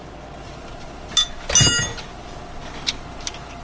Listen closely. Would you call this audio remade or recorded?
recorded